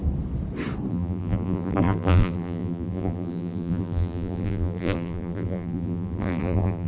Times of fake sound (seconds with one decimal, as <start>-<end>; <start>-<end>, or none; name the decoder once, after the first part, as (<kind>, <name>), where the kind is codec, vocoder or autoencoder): 0.9-6.9 (vocoder, BigVGAN v2)